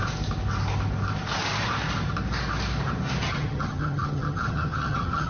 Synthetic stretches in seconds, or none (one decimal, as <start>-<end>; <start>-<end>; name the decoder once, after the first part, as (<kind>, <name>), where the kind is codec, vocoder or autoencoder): 3.2-5.3 (vocoder, HiFi-GAN)